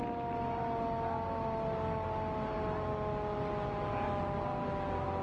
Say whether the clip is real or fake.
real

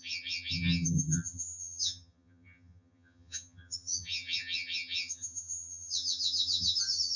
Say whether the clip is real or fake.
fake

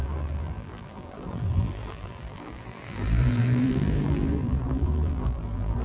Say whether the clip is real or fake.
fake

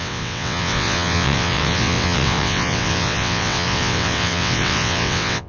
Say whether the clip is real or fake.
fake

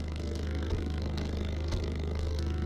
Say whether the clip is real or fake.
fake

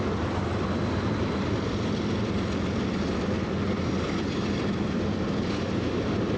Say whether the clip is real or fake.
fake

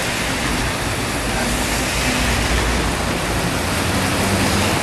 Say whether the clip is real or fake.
real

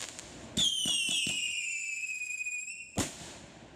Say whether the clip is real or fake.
real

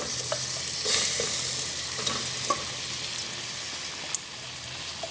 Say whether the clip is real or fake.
real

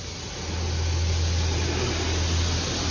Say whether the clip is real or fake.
real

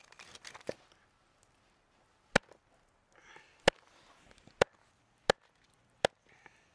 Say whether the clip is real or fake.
real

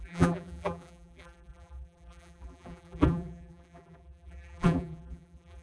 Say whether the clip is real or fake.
fake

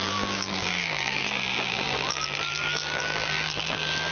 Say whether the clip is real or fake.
fake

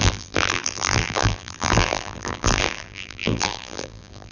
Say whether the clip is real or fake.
fake